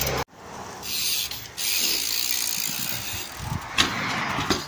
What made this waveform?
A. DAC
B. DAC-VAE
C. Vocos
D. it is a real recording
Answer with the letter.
D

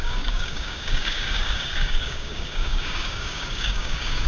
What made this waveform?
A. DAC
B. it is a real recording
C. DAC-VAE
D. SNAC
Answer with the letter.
A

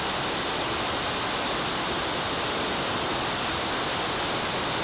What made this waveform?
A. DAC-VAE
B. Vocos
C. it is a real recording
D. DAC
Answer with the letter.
C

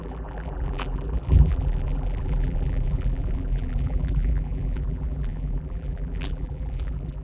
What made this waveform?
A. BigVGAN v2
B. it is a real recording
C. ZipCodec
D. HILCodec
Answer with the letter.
A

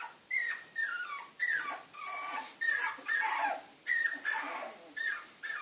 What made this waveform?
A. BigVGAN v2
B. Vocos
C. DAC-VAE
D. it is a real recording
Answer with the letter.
A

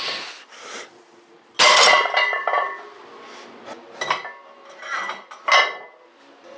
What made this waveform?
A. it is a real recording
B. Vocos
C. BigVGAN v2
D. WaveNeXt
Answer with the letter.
A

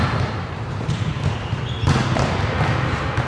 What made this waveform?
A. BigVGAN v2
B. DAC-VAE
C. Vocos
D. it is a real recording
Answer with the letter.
A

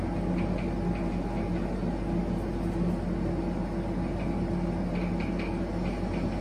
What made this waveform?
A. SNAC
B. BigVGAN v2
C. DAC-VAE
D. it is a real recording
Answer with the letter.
D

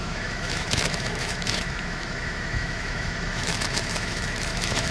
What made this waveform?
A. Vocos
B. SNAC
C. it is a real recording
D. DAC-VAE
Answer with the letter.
D